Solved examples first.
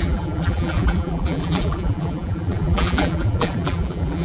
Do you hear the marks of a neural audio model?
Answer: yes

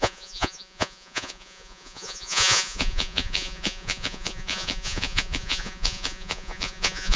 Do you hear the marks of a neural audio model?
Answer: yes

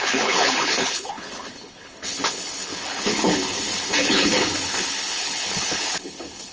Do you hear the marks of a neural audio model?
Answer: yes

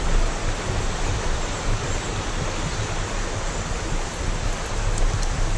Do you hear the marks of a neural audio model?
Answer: no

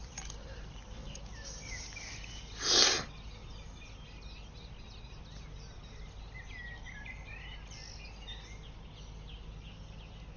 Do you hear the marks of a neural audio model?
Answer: no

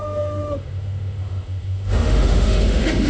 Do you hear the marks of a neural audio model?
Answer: yes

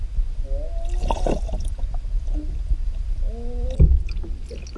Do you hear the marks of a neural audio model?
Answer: no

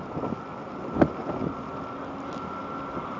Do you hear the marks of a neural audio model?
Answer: no